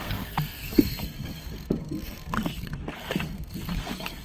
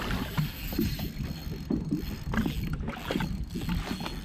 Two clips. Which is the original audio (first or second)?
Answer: second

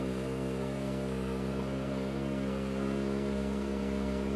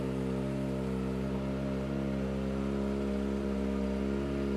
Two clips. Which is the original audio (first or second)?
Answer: second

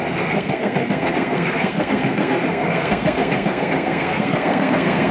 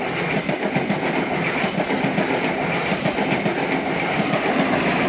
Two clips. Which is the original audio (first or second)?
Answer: second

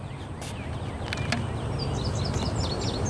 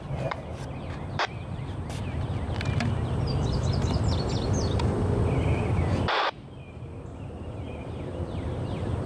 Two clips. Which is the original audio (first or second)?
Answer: first